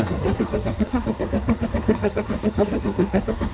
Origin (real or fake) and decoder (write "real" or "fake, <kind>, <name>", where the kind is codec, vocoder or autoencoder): fake, codec, SNAC